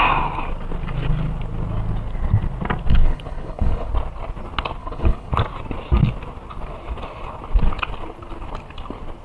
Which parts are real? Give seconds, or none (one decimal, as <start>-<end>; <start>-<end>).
0.0-2.9; 3.9-4.8; 5.3-9.2